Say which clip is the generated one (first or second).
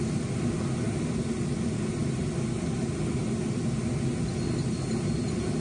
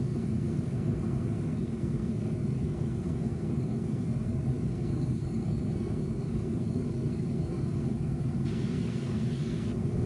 second